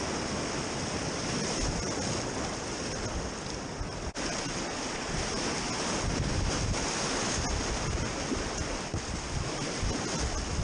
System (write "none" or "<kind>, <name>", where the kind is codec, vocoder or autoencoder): none